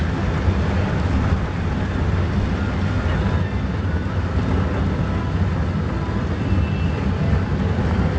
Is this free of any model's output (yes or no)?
yes